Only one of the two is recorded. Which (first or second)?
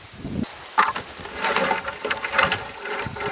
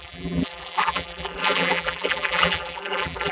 first